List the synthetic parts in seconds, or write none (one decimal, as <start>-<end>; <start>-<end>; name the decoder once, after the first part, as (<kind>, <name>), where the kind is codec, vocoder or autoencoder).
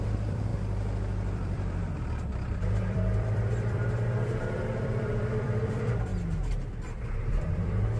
0.0-6.1 (vocoder, BigVGAN v2); 7.3-8.0